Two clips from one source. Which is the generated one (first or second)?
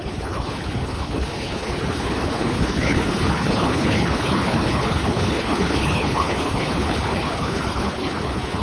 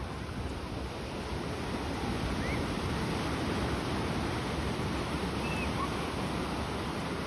first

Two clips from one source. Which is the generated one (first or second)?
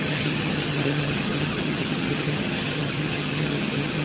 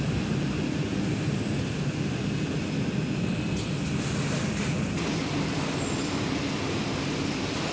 first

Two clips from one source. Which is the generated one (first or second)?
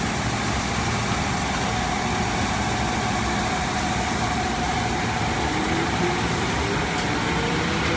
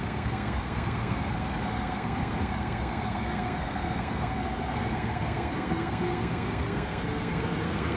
second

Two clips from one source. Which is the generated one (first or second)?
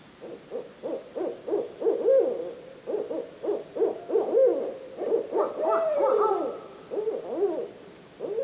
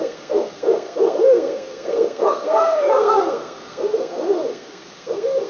second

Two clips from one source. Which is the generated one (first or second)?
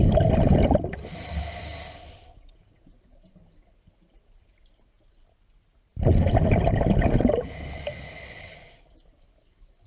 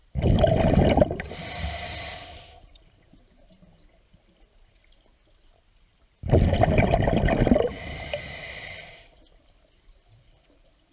second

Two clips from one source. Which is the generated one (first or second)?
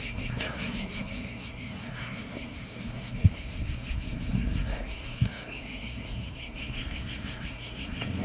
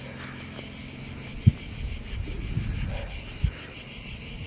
first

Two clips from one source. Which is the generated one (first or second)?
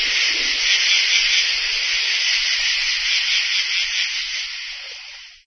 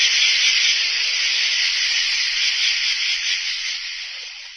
second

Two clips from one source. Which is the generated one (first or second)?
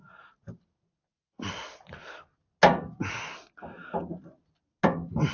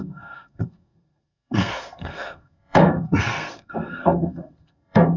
second